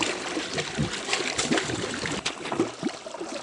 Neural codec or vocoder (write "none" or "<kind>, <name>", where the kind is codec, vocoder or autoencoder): none